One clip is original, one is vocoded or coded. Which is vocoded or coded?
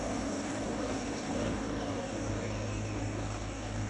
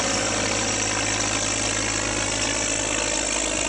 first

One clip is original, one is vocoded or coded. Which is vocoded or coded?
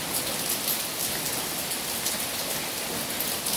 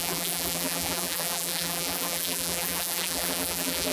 second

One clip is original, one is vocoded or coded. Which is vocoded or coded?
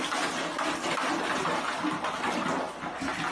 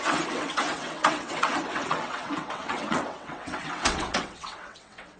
second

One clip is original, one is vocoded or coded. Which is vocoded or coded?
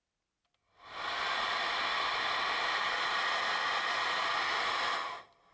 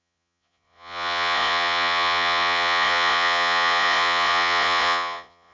second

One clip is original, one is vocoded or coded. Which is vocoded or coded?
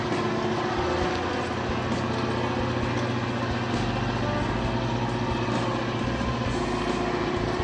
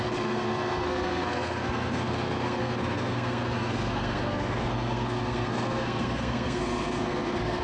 second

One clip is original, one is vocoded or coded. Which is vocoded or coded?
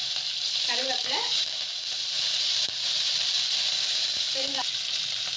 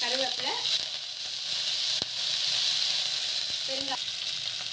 first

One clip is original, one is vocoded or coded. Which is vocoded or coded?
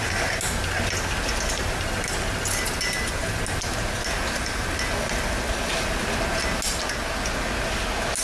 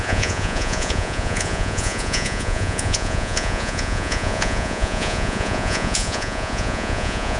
second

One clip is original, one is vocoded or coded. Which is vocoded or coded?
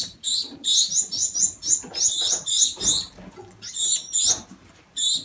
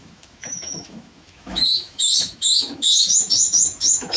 second